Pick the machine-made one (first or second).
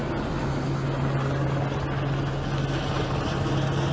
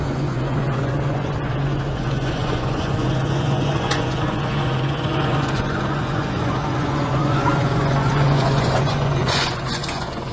second